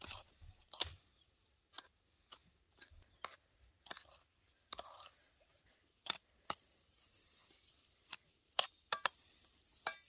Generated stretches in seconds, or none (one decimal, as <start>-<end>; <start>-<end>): none